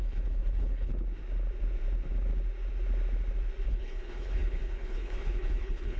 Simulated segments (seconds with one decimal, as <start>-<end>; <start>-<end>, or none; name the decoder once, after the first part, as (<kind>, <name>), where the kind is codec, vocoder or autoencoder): 0.0-0.9 (codec, HILCodec); 3.7-6.0